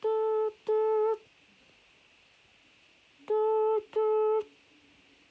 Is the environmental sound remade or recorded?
recorded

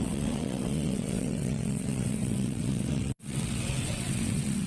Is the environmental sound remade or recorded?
remade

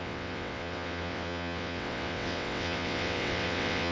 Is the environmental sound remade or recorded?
remade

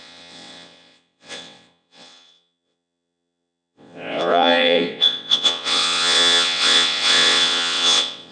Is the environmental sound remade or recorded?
remade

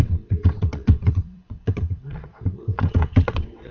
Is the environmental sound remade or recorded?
remade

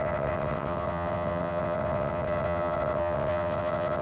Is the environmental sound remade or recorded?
remade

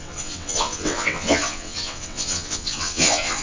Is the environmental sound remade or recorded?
remade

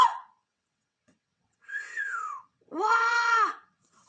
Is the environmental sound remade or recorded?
remade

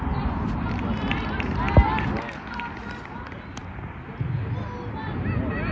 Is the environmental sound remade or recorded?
recorded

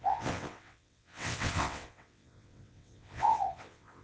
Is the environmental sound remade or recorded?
remade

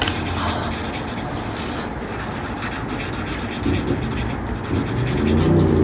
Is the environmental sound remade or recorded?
recorded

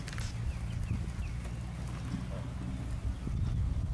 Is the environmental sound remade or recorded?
recorded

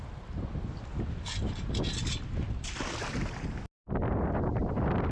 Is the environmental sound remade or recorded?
recorded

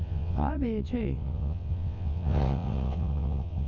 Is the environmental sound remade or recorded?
remade